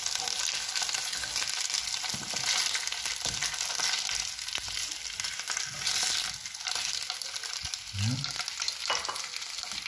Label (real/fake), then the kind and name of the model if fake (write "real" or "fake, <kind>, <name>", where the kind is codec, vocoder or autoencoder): real